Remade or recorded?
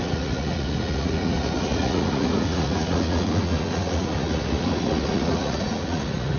remade